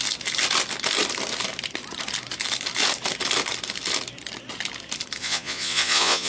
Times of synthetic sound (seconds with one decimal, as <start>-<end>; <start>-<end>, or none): 5.2-6.3